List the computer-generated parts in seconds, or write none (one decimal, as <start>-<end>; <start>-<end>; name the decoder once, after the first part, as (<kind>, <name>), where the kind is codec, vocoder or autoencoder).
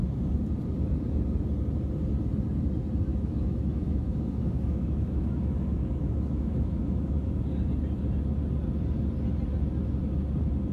3.1-7.4 (autoencoder, DAC-VAE)